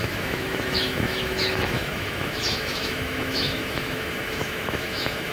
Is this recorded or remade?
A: remade